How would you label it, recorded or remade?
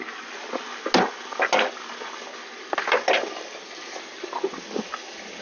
recorded